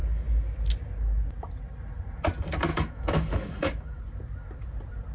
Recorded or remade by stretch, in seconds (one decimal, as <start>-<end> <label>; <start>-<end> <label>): 0.0-2.7 recorded; 2.7-4.0 remade; 4.0-5.1 recorded